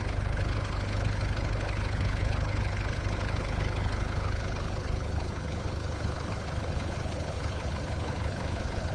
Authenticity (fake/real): fake